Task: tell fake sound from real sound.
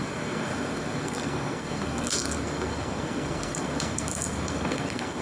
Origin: fake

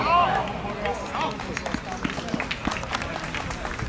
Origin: real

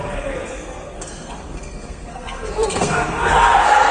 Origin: fake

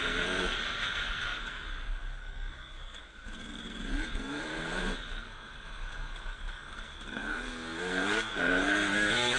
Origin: fake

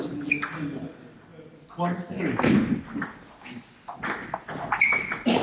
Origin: real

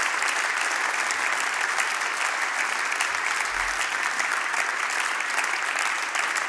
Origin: real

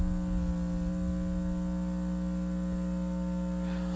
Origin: real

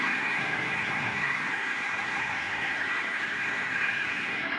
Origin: fake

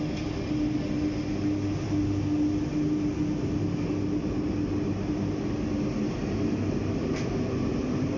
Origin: real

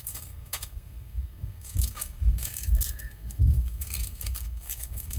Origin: fake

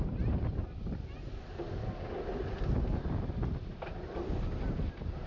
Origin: real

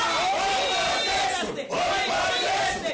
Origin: real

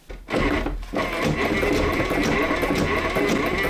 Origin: real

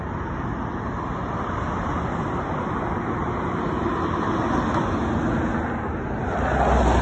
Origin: real